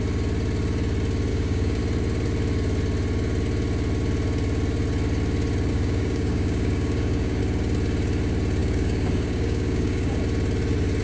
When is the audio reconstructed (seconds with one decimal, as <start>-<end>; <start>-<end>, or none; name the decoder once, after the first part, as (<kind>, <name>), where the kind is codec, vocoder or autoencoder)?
1.3-1.8 (codec, DAC); 5.7-7.4; 8.6-10.2